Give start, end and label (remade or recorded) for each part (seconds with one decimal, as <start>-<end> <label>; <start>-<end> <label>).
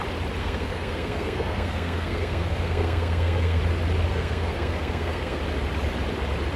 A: 0.0-0.4 recorded; 0.4-3.6 remade; 3.6-4.1 recorded; 4.1-5.4 remade; 5.4-6.6 recorded